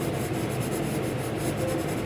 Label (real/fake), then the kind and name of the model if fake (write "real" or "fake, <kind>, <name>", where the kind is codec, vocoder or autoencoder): real